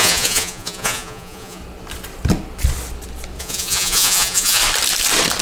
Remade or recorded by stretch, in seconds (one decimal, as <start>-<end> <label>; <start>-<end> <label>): 0.0-1.6 remade; 1.6-3.4 recorded; 3.4-4.6 remade; 4.6-5.4 recorded